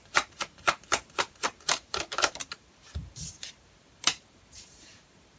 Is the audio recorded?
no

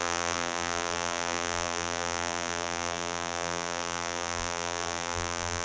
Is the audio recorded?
no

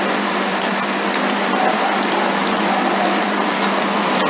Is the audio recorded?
no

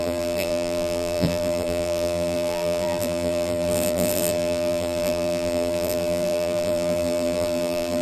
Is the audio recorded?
no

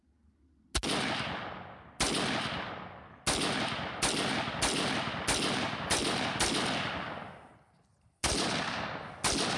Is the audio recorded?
yes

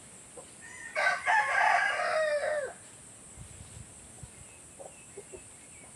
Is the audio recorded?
yes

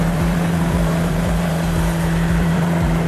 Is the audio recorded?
no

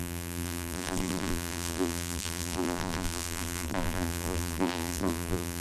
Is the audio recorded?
no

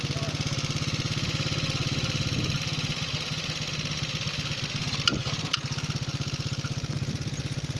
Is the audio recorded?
yes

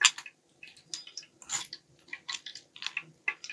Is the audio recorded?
yes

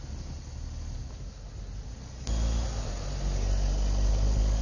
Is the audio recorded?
yes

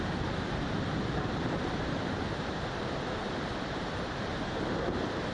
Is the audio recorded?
no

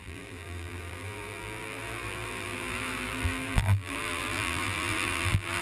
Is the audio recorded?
no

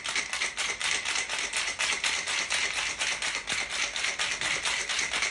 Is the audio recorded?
yes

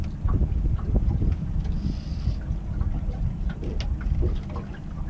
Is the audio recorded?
yes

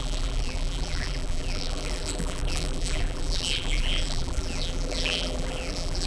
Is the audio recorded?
no